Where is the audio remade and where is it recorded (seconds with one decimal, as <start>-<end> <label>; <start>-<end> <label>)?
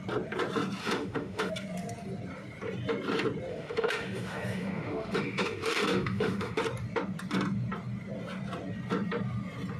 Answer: 0.0-0.8 recorded; 0.8-1.5 remade; 1.5-3.5 recorded; 3.5-6.6 remade; 6.6-9.8 recorded